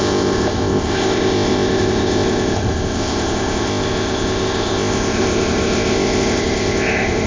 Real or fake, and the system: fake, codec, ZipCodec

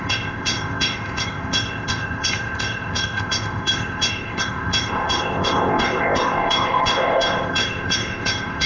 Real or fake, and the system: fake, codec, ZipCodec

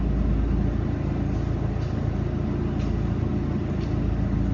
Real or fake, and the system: real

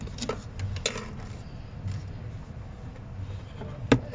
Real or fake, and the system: real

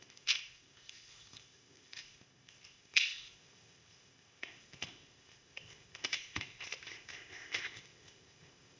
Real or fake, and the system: fake, codec, ZipCodec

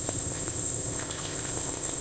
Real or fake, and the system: fake, codec, ZipCodec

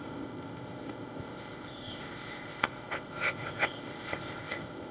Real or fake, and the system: fake, codec, ZipCodec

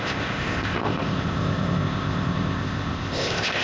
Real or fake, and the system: fake, codec, ZipCodec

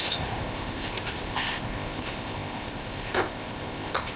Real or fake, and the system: fake, codec, ZipCodec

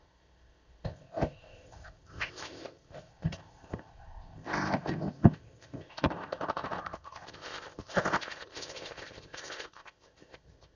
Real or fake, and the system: fake, codec, ZipCodec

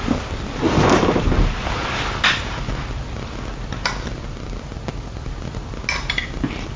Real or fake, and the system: real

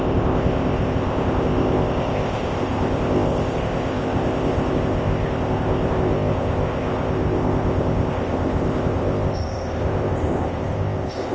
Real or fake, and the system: fake, codec, ZipCodec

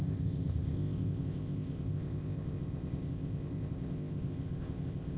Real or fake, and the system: fake, codec, ZipCodec